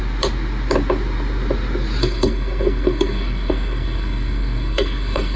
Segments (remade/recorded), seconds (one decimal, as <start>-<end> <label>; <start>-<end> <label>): 0.0-2.0 recorded; 2.0-5.4 remade